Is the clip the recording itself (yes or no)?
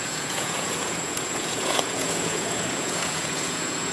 no